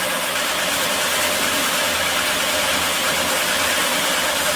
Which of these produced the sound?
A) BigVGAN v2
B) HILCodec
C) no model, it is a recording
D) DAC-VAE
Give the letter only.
C